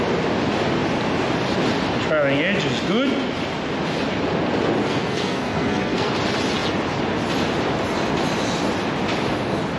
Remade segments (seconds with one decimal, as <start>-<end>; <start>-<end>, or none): 4.8-6.1